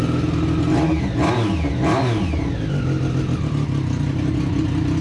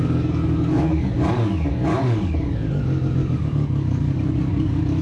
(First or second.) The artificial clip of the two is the second